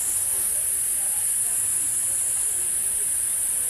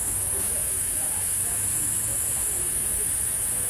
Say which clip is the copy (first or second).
second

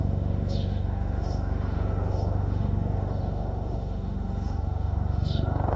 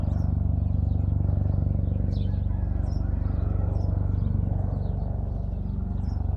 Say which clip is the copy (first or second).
first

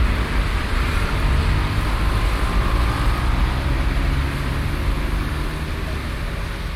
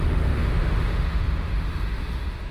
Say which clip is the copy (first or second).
second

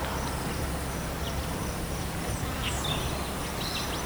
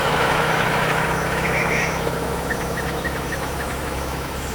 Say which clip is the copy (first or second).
second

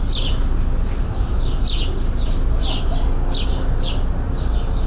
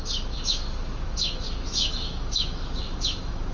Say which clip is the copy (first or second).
second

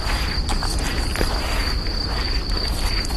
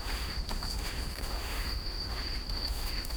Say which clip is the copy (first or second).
second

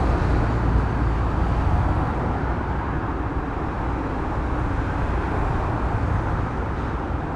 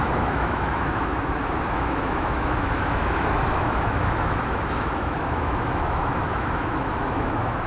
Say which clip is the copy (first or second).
second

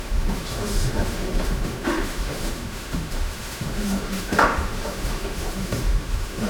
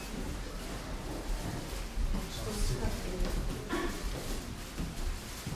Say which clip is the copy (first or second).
first